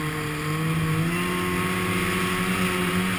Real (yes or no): yes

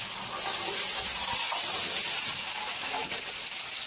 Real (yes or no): yes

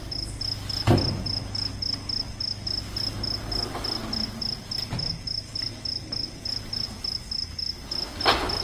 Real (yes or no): yes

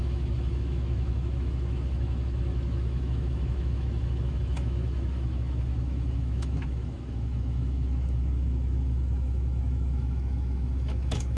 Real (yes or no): no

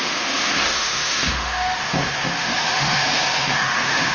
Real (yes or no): no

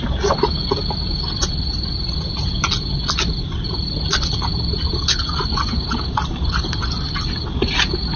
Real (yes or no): yes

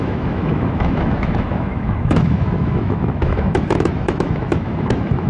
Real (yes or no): no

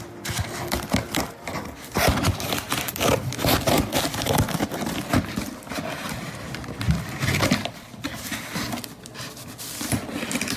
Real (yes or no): yes